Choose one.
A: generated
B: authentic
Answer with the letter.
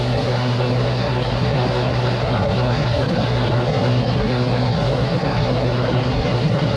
A